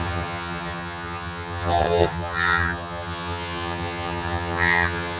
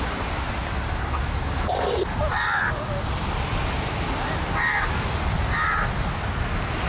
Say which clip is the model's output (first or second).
first